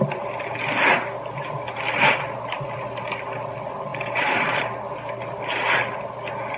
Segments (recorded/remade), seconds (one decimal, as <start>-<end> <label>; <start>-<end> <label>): 0.0-3.9 recorded; 3.9-4.7 remade; 4.7-6.6 recorded